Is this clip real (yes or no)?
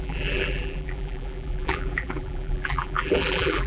no